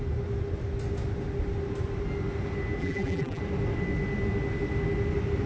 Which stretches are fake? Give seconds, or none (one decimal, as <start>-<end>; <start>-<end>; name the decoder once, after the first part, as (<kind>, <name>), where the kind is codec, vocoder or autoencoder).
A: 2.8-3.4 (vocoder, BigVGAN v2)